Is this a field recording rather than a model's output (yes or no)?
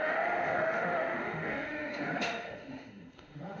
no